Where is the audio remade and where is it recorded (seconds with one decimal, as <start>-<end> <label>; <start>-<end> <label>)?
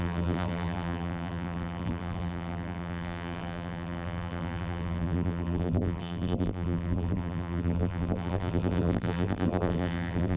0.0-10.4 remade